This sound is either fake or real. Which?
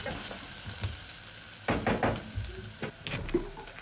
real